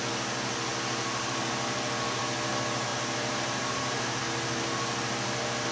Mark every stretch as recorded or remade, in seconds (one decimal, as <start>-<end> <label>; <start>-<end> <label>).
0.0-2.9 recorded; 2.9-4.2 remade; 4.2-5.7 recorded